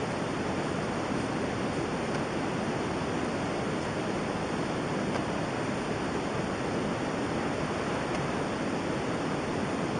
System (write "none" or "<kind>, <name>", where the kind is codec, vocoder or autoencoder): none